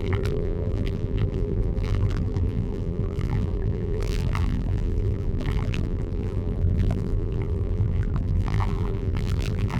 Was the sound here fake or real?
fake